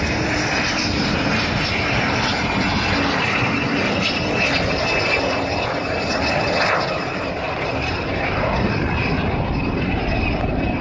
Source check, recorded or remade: recorded